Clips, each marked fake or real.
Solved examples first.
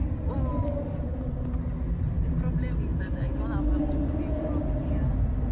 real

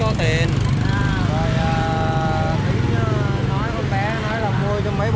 real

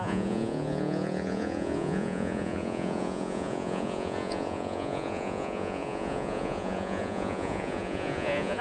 fake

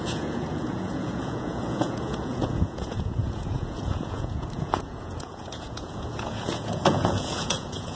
fake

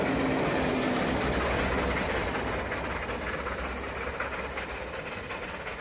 real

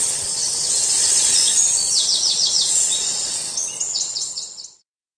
fake